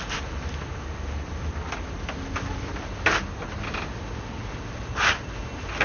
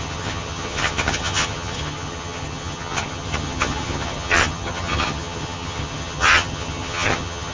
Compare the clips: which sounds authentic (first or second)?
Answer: first